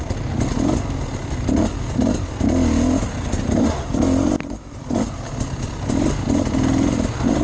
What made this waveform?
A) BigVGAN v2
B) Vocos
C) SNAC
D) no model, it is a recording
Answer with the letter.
D